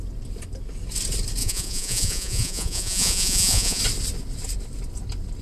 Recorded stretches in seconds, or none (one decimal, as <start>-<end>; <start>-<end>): 0.0-1.4; 3.8-5.4